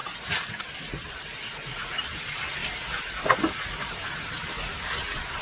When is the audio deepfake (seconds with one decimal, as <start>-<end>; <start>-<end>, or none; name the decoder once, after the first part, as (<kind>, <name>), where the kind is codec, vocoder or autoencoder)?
0.0-0.6 (vocoder, Vocos); 1.4-1.9